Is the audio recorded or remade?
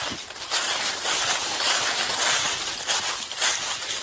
recorded